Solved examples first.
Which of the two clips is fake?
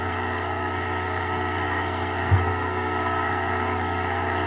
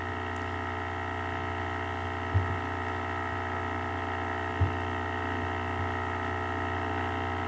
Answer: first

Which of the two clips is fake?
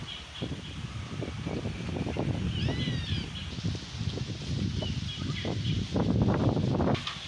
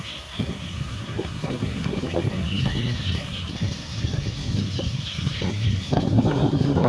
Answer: second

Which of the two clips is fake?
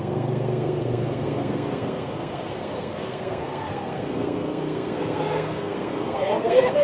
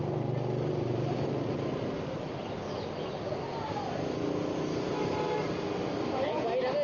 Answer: first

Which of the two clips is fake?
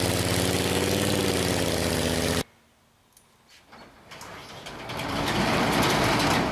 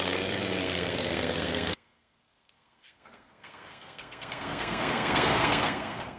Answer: second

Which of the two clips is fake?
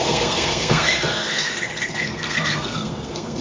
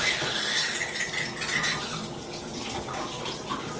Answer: first